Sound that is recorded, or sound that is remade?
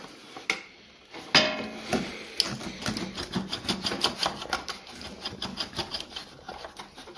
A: recorded